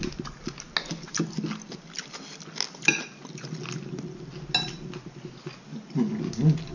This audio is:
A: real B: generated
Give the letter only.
A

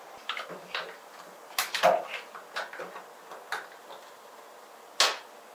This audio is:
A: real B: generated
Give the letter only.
A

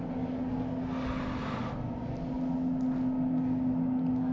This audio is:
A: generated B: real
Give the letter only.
B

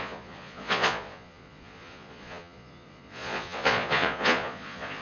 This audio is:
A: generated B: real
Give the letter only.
A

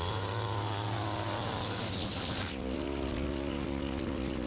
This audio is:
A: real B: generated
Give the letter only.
A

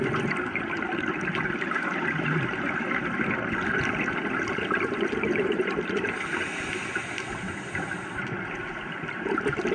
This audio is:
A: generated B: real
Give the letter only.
B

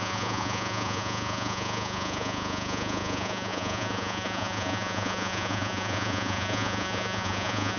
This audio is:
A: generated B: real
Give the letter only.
A